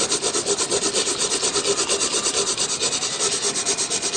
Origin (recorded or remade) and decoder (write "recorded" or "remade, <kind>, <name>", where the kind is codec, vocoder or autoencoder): recorded